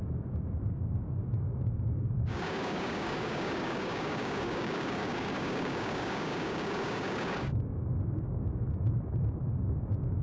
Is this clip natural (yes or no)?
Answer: no